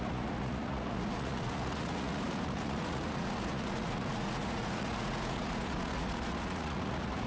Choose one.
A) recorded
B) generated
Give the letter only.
B